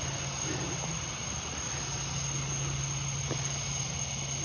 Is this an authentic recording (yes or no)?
yes